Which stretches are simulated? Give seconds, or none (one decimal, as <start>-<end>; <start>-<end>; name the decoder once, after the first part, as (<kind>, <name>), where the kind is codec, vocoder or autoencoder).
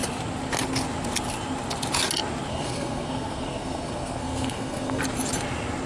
2.5-5.0 (codec, SNAC)